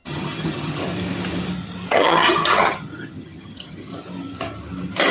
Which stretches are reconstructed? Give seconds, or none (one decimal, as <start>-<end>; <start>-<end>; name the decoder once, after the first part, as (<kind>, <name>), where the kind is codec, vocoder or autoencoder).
0.0-0.8 (vocoder, HiFi-GAN); 1.9-3.9